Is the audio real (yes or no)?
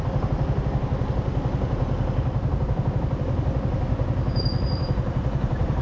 yes